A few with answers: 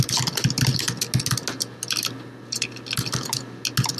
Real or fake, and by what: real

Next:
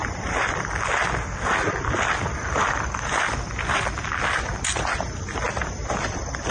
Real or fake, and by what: real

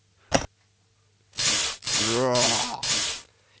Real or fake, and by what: real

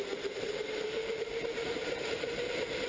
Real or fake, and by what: fake, vocoder, BigVGAN v2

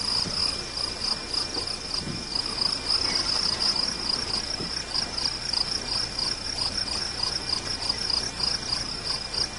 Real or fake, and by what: real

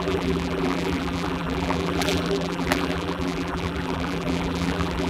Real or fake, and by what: fake, vocoder, BigVGAN v2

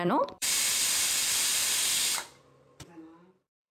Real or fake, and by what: fake, vocoder, BigVGAN v2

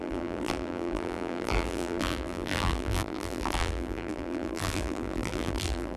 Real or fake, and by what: fake, vocoder, BigVGAN v2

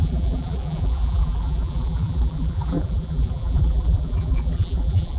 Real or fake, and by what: fake, vocoder, BigVGAN v2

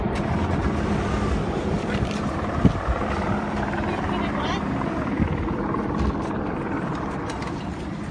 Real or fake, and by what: fake, vocoder, BigVGAN v2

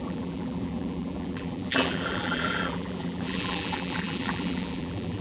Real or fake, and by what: fake, vocoder, BigVGAN v2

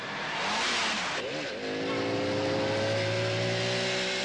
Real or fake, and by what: real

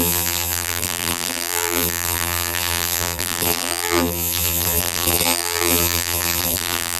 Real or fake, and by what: fake, vocoder, BigVGAN v2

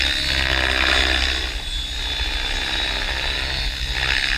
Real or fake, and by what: real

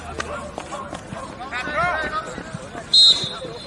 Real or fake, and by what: real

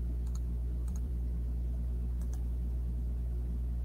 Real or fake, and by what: fake, vocoder, BigVGAN v2